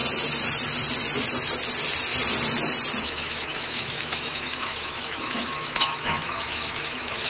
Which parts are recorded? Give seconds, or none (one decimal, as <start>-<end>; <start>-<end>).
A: 0.0-3.0